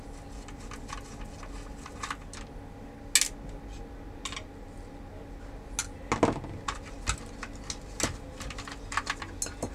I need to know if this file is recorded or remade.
recorded